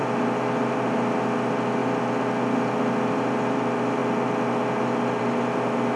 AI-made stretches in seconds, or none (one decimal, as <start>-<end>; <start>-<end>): none

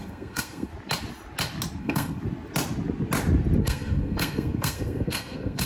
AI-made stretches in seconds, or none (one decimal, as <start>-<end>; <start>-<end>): 0.0-0.7; 1.8-2.2; 3.6-5.7

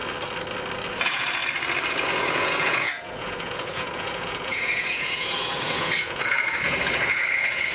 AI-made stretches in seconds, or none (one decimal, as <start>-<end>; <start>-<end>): 0.9-1.4; 1.9-7.7

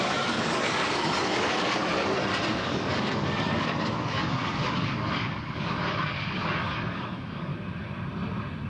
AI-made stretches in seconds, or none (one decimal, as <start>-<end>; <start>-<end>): 0.0-1.8; 2.5-7.5

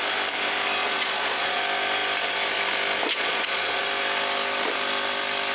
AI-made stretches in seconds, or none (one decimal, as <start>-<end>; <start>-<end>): 0.8-1.6; 3.1-3.8